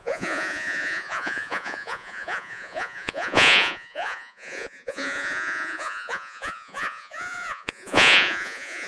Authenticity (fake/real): fake